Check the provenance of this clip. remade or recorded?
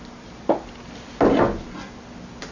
recorded